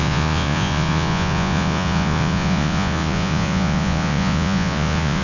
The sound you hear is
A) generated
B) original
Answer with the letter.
A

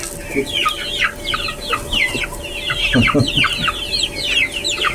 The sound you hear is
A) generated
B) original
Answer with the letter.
B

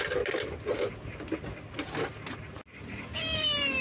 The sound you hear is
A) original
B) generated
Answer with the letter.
A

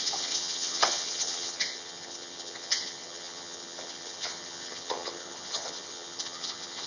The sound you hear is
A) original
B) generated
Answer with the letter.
B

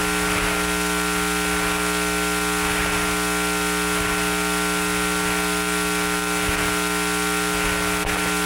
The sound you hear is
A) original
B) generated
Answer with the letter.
A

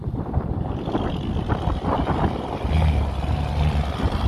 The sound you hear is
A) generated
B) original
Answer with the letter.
A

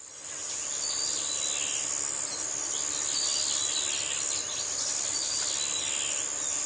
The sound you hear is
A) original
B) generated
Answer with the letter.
A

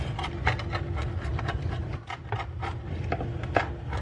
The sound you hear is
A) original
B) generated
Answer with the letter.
A